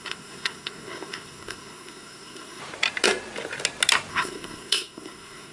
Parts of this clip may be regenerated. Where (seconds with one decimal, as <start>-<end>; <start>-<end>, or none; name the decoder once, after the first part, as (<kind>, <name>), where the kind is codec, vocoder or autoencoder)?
0.0-2.6 (codec, SNAC); 4.1-5.5